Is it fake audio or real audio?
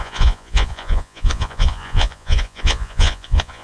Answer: fake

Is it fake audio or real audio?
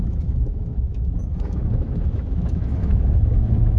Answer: fake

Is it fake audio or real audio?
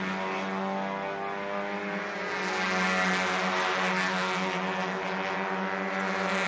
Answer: real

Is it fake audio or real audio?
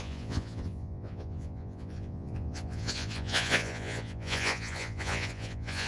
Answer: fake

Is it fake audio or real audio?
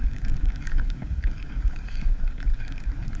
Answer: fake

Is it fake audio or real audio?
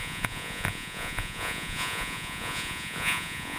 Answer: fake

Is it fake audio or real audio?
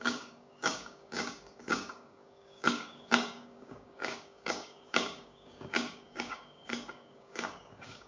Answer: fake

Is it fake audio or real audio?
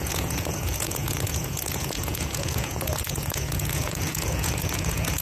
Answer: fake